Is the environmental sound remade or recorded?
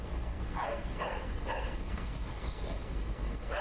remade